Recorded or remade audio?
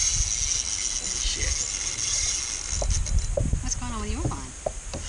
recorded